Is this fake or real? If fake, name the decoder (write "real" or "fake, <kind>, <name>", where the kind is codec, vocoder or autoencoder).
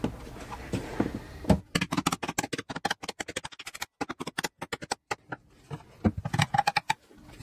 real